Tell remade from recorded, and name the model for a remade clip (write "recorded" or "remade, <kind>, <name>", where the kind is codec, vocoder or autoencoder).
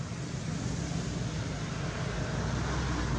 recorded